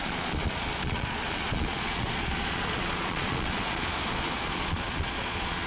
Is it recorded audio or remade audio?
remade